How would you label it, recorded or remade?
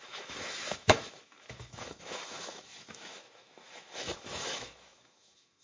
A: remade